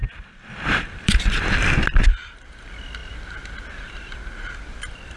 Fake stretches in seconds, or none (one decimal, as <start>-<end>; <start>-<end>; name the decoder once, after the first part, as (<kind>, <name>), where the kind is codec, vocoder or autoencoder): 1.0-5.2 (vocoder, BigVGAN v2)